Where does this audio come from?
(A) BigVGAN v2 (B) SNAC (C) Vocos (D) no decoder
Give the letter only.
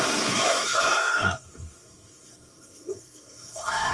B